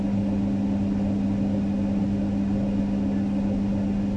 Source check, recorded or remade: recorded